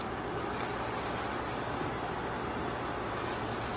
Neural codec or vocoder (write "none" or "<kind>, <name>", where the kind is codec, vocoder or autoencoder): none